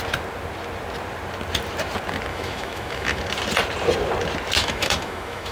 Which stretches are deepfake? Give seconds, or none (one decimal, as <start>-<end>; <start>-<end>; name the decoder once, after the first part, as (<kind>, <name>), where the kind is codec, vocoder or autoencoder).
2.3-3.2 (autoencoder, DAC-VAE); 4.6-5.5